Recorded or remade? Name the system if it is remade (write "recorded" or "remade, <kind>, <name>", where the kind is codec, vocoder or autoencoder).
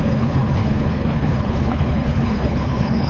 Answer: remade, codec, HILCodec